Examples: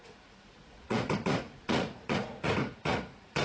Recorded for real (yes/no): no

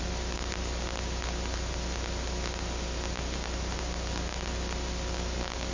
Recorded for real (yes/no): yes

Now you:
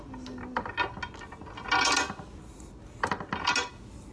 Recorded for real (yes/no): yes